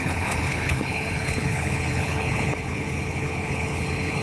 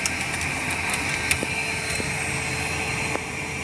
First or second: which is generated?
first